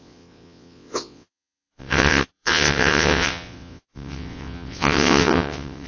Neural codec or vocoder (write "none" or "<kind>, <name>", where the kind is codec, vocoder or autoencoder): vocoder, WaveNeXt